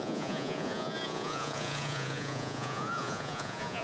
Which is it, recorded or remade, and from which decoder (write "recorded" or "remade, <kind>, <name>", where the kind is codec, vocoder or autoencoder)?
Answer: remade, vocoder, Vocos